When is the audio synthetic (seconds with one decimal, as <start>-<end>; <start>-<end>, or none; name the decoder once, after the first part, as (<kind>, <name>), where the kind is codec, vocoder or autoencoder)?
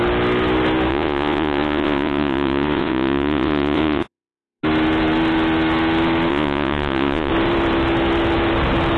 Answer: 0.9-4.6 (vocoder, Vocos); 6.3-7.3